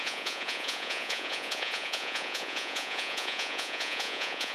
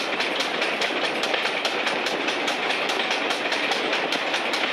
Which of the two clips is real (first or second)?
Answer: second